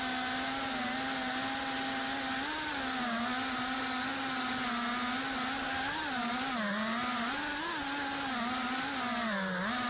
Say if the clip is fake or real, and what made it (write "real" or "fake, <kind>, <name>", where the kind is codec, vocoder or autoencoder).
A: real